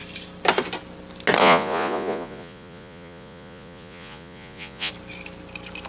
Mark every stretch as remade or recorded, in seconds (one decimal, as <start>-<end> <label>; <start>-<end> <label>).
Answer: 0.0-1.4 recorded; 1.4-4.9 remade; 4.9-5.9 recorded